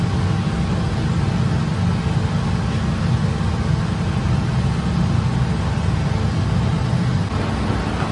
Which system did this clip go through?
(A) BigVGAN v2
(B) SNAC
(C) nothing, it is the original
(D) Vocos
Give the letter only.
C